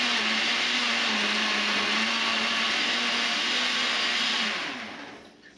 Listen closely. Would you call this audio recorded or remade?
recorded